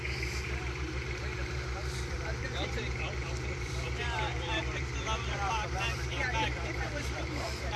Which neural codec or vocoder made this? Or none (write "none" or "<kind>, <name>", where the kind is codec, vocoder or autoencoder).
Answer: vocoder, BigVGAN v2